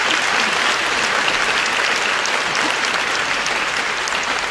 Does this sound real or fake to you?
real